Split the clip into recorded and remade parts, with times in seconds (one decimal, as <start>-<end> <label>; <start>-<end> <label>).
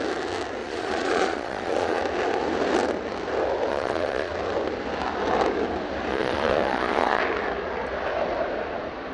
0.0-0.6 recorded; 0.6-2.0 remade; 2.0-3.7 recorded; 3.7-4.3 remade; 4.3-6.1 recorded; 6.1-7.2 remade; 7.2-9.1 recorded